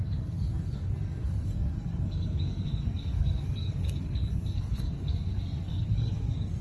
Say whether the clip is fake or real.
fake